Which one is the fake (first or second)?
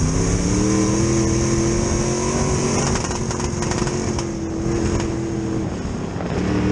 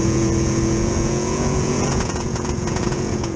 second